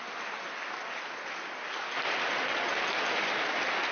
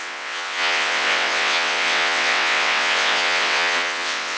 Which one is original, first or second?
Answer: first